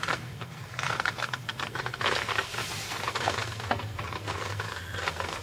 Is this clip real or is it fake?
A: fake